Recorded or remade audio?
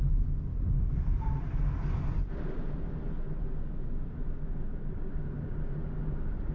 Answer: recorded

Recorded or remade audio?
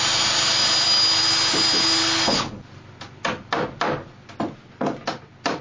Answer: recorded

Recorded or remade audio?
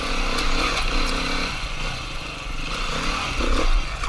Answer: remade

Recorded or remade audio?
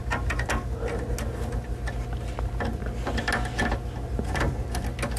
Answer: recorded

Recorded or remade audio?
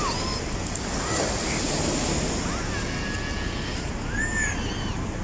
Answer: recorded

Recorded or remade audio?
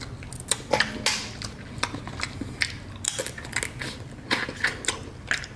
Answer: recorded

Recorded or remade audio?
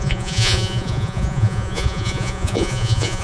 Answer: remade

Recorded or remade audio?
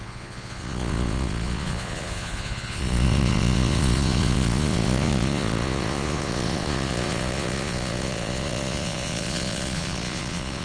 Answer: remade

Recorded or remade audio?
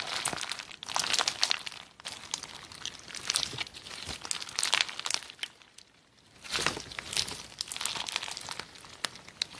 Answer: recorded